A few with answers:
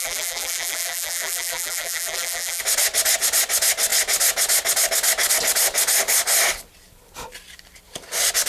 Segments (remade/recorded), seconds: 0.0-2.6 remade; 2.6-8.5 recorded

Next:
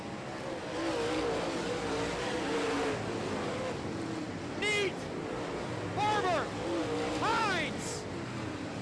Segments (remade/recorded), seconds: 0.0-7.3 recorded; 7.3-8.8 remade

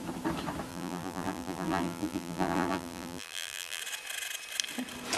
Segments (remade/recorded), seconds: 0.0-0.7 recorded; 0.7-3.8 remade; 3.8-5.2 recorded

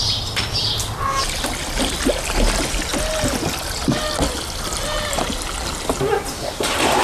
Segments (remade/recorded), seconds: 0.0-7.0 recorded

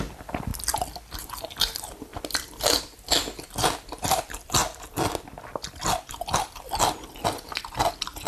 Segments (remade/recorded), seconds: 0.0-0.5 remade; 0.5-1.2 recorded; 1.2-4.6 remade; 4.6-8.3 recorded

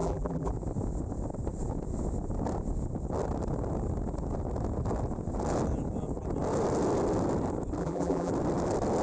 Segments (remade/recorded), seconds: 0.0-0.5 remade; 0.5-7.8 recorded; 7.8-8.3 remade; 8.3-9.0 recorded

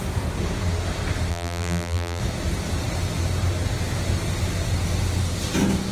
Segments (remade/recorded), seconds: 0.0-1.3 recorded; 1.3-2.2 remade; 2.2-5.9 recorded

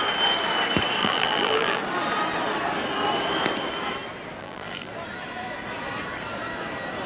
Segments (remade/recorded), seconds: 0.0-1.0 recorded; 1.0-1.8 remade; 1.8-4.4 recorded; 4.4-4.9 remade; 4.9-7.1 recorded